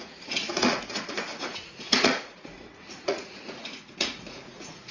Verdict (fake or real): fake